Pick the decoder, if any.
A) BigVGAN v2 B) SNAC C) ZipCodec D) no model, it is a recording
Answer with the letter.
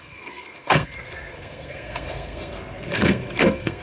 B